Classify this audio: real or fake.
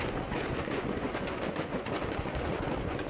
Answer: fake